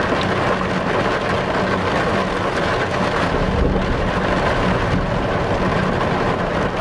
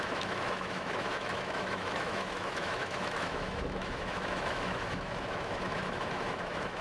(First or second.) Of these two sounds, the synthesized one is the second